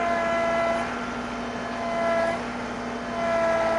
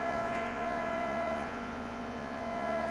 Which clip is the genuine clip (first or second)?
first